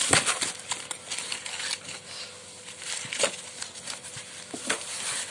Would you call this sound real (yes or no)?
yes